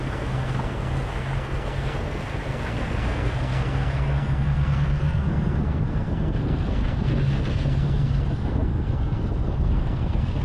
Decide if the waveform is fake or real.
fake